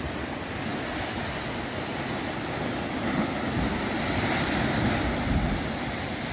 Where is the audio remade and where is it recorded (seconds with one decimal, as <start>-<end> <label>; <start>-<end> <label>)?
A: 0.0-6.3 recorded